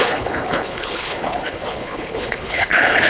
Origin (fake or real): fake